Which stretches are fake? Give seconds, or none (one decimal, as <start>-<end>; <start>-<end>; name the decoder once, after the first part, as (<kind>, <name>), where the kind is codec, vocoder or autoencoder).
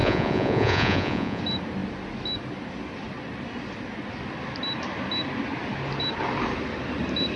0.0-1.4 (vocoder, Vocos)